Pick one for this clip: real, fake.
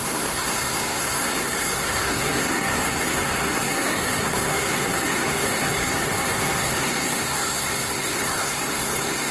fake